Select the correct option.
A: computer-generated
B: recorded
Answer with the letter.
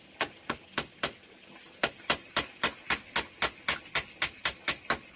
B